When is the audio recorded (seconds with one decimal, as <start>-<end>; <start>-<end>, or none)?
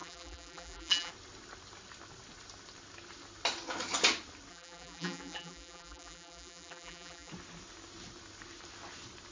1.1-4.5; 7.3-9.3